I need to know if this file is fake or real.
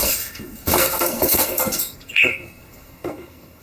fake